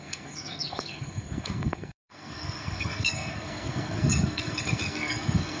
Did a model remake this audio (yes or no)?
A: yes